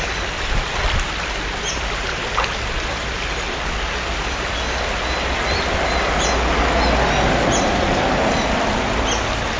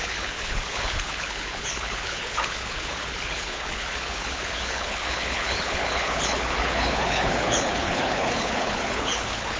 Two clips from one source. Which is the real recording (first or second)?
first